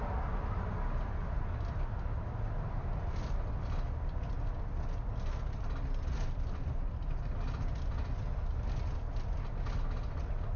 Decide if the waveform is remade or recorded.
recorded